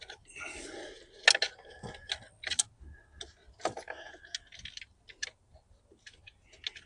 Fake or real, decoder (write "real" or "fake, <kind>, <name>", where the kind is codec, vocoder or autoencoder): real